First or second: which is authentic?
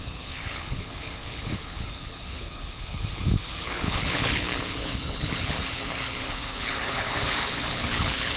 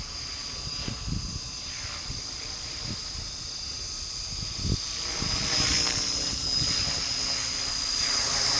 second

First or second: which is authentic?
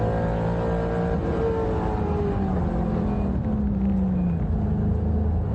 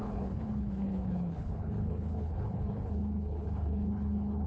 first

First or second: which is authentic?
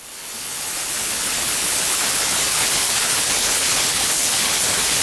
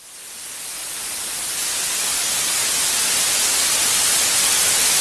second